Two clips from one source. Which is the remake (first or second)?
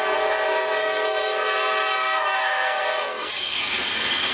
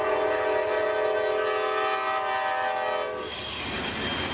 first